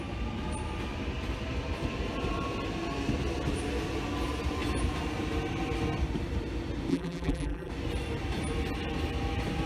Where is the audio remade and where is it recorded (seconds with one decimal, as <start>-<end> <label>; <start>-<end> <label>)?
0.0-6.9 recorded; 6.9-7.7 remade; 7.7-9.7 recorded